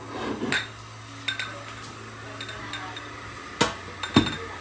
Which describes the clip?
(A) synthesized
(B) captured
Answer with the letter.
B